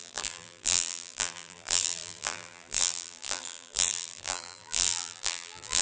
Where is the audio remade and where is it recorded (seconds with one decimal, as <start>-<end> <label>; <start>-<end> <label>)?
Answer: 0.0-5.8 remade